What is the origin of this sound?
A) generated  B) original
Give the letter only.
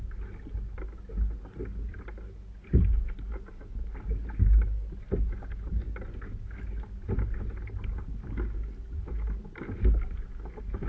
B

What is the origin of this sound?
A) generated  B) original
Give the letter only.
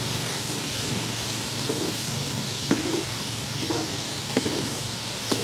A